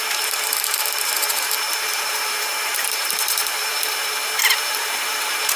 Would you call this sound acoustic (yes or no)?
no